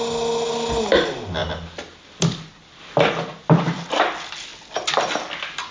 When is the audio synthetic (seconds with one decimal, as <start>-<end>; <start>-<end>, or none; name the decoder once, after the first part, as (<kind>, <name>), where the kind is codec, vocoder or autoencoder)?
none